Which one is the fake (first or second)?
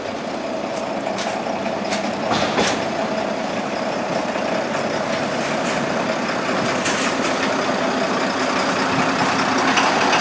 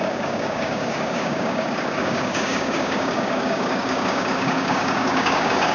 second